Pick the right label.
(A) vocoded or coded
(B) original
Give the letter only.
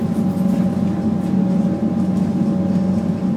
B